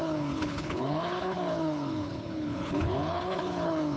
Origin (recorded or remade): remade